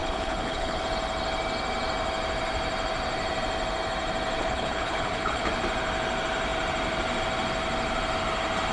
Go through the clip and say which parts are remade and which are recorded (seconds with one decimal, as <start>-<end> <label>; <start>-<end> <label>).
0.0-0.8 remade; 0.8-4.4 recorded; 4.4-5.5 remade; 5.5-8.7 recorded